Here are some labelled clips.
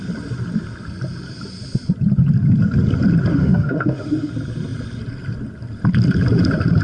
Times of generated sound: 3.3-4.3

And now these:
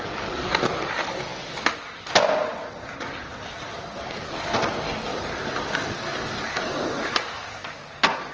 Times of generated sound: none

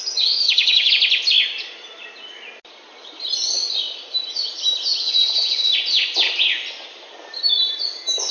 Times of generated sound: 0.4-0.9

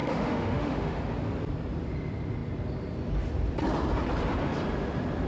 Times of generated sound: 0.0-1.0

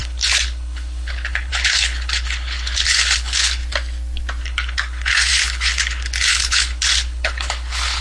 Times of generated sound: 0.0-3.6; 4.4-8.0